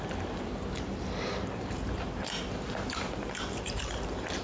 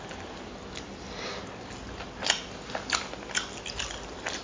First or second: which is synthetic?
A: first